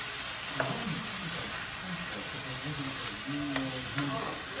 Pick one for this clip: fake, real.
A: real